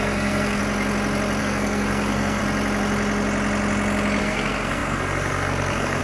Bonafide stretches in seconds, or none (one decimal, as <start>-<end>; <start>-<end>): 0.6-1.4; 2.4-4.2